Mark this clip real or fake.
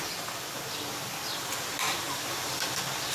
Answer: real